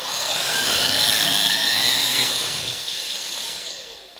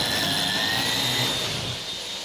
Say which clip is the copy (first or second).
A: first